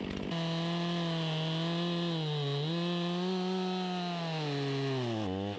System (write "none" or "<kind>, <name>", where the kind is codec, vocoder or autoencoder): none